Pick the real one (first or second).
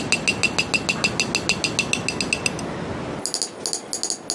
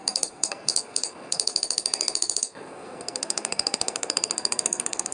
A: first